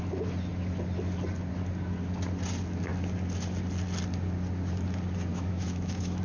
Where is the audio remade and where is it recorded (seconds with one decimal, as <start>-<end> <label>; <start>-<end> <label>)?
0.0-5.3 recorded; 5.3-6.2 remade